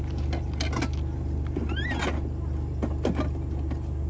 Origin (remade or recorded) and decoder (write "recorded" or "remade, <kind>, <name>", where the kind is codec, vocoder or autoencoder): recorded